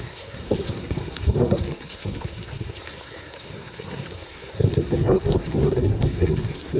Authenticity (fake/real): fake